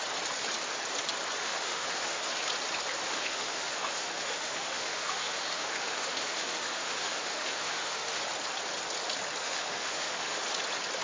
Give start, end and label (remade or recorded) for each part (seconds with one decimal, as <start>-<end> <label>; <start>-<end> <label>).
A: 0.0-1.4 recorded; 1.4-2.2 remade; 2.2-3.0 recorded; 3.0-8.2 remade; 8.2-9.4 recorded; 9.4-10.4 remade; 10.4-11.0 recorded